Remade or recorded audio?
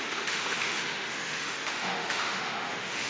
remade